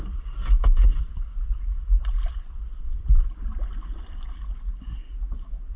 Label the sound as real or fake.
real